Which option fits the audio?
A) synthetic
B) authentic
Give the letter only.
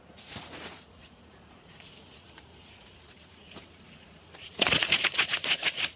A